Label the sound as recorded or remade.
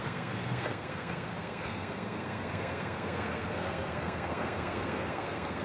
remade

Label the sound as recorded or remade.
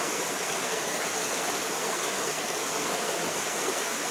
remade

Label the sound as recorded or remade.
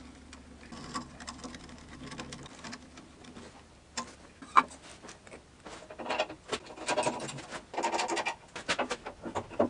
recorded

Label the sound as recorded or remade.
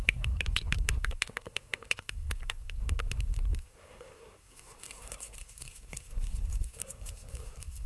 remade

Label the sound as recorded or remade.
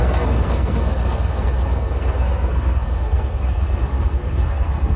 remade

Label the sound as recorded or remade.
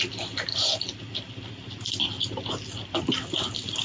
recorded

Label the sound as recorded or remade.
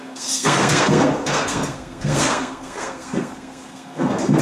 remade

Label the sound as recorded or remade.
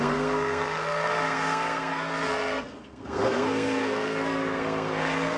remade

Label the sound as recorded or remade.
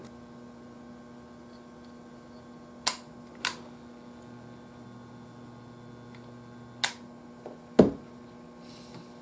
recorded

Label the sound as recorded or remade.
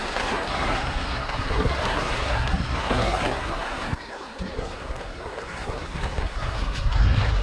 remade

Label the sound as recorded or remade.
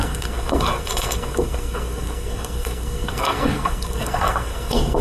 remade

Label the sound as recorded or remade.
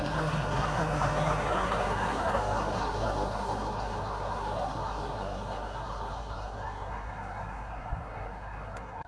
remade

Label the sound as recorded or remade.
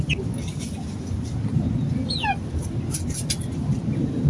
recorded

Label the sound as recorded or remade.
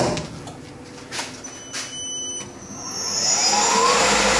recorded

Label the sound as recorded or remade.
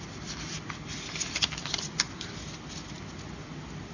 recorded